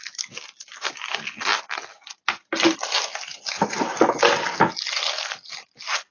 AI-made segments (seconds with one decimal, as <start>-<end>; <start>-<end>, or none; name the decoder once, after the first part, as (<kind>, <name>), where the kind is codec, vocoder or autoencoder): none